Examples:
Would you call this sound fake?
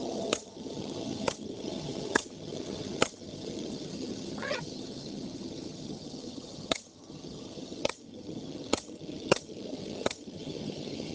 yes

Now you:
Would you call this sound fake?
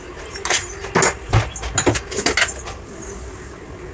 no